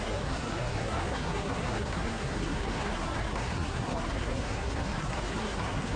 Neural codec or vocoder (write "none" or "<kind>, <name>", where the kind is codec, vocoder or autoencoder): codec, SNAC